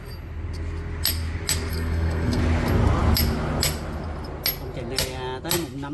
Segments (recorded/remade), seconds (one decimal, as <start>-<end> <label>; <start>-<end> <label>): 0.0-1.7 recorded; 1.7-2.4 remade; 2.4-5.9 recorded